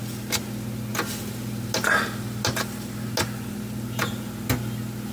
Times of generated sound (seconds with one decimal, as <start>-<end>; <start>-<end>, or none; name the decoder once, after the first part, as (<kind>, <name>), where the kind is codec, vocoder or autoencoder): none